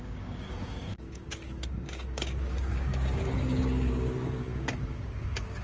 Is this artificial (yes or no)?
yes